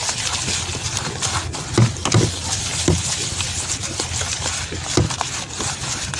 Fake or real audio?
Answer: real